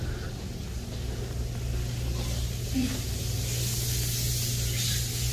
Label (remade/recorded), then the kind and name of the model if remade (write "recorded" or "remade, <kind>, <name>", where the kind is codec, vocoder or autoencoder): recorded